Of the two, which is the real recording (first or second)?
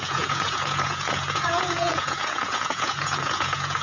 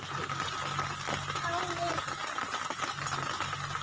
second